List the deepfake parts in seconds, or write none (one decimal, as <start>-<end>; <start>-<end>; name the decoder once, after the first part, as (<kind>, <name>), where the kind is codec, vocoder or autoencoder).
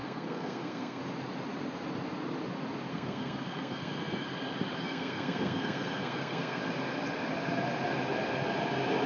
0.0-1.0 (codec, SNAC); 2.9-3.9; 4.8-6.6